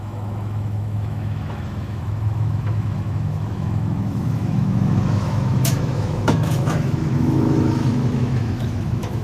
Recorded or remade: remade